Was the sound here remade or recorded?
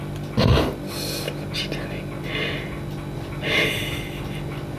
recorded